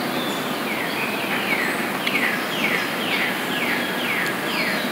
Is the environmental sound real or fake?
real